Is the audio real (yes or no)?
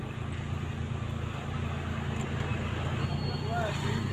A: yes